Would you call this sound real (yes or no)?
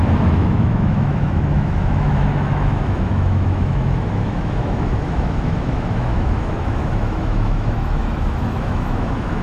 no